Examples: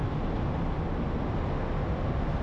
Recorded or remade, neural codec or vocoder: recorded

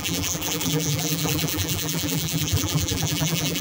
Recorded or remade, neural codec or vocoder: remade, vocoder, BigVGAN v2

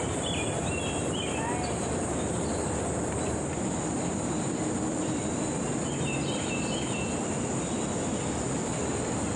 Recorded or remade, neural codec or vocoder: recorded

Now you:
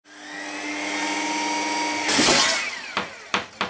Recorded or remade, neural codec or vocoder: recorded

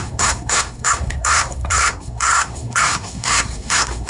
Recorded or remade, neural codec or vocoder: remade, codec, SNAC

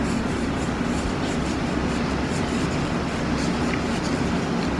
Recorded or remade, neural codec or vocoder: recorded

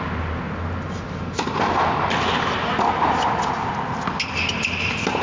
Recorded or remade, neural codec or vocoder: recorded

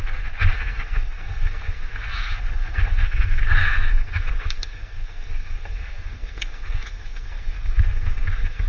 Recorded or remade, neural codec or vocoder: remade, codec, SNAC